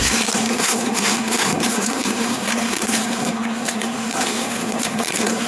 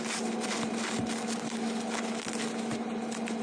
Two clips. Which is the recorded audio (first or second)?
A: second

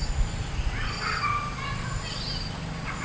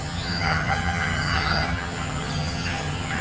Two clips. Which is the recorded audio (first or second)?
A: first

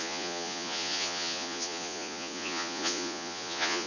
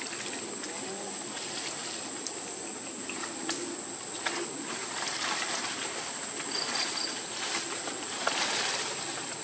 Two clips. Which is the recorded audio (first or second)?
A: second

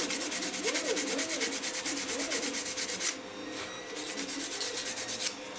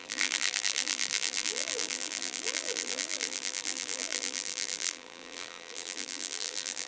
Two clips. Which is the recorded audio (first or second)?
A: first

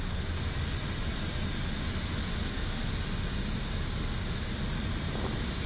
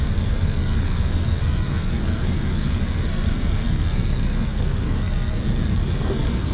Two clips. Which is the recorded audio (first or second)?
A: first